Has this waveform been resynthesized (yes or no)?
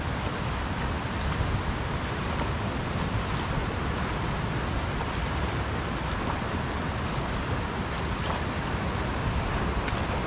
no